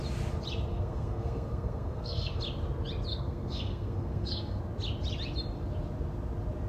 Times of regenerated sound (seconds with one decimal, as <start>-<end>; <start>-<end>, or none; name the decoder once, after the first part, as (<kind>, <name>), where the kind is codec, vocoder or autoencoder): 0.7-2.4 (codec, SNAC); 3.1-4.6

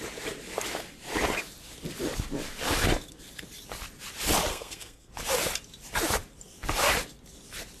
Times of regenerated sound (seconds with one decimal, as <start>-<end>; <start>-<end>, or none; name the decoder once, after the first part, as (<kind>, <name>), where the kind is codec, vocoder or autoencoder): 4.5-5.1 (codec, SNAC)

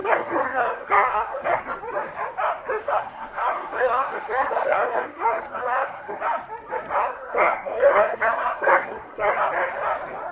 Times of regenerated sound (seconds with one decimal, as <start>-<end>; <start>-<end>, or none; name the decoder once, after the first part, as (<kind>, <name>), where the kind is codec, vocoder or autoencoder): 0.0-1.6 (codec, SNAC); 2.8-6.2; 7.0-9.3

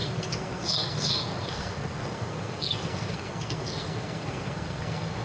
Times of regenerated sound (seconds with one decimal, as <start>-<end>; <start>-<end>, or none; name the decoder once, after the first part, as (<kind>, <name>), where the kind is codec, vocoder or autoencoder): 0.0-5.2 (codec, SNAC)

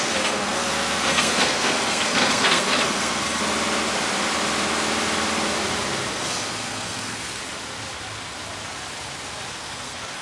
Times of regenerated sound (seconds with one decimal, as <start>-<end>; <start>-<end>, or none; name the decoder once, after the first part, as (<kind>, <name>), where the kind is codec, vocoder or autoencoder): 0.0-3.4 (codec, SNAC); 6.1-7.4; 9.5-10.2

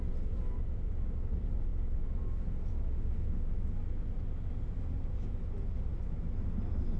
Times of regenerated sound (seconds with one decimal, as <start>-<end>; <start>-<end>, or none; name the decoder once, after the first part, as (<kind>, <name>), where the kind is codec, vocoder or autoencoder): none

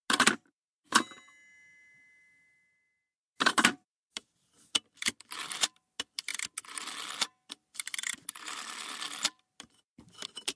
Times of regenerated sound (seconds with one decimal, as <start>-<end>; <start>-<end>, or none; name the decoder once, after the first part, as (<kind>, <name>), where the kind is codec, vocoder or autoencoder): none

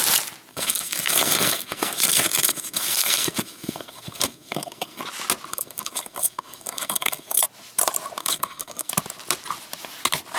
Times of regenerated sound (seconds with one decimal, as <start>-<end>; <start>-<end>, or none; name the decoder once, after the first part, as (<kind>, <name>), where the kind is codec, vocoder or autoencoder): 0.5-5.0 (codec, SNAC); 5.5-7.4; 8.2-8.9